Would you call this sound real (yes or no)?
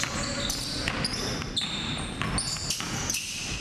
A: yes